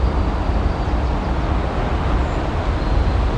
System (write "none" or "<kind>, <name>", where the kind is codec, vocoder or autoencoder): none